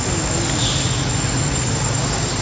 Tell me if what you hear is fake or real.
real